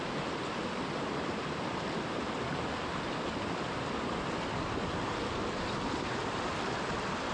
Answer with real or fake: real